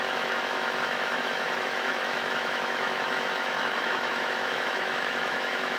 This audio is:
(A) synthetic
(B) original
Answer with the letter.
A